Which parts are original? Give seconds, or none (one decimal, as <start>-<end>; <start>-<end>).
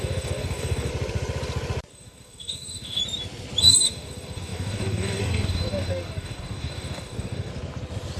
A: 0.9-1.9; 3.0-3.6; 7.5-8.2